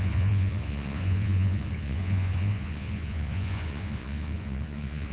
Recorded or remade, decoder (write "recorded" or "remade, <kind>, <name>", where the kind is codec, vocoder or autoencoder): remade, vocoder, Vocos